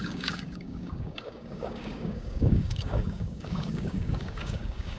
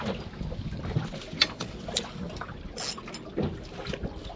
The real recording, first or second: second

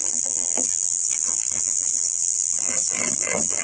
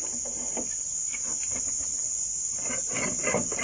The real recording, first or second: second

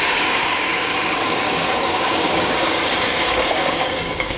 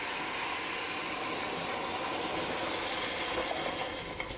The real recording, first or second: second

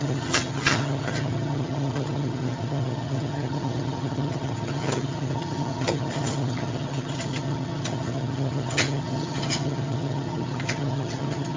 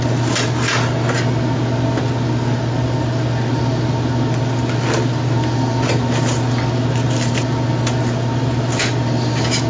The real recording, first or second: second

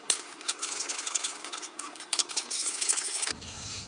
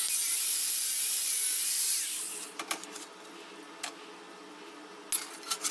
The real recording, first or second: second